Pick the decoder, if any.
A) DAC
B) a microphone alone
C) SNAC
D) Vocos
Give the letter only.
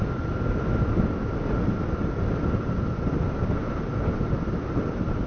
B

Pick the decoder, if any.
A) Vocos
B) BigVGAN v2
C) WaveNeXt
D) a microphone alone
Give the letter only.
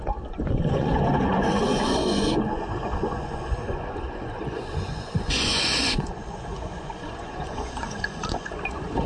A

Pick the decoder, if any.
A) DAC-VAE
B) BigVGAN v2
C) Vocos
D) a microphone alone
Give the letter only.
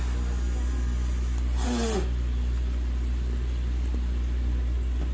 D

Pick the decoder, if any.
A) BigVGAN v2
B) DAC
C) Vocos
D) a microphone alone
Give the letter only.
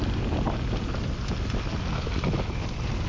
D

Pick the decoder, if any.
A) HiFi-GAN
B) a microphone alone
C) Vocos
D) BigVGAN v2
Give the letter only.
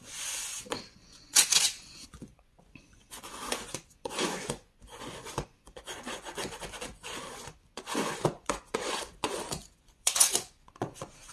C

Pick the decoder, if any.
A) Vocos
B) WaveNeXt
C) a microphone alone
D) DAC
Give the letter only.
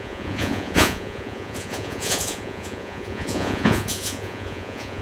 A